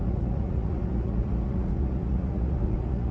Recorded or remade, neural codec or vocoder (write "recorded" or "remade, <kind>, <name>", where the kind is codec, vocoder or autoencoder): remade, vocoder, Vocos